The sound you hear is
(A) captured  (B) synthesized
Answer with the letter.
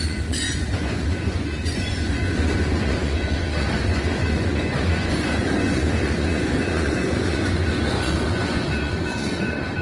B